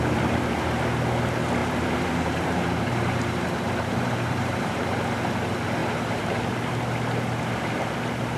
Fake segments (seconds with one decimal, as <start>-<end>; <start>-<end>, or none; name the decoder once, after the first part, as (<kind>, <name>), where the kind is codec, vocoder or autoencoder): 1.6-4.8 (vocoder, BigVGAN v2); 5.8-6.4